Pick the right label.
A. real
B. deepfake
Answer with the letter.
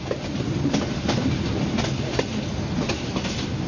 A